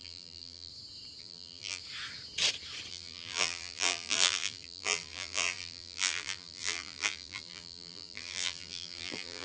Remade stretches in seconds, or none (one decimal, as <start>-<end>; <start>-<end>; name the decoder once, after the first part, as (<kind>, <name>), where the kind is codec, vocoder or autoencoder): 0.0-0.7 (vocoder, BigVGAN v2); 1.2-1.8; 2.9-9.4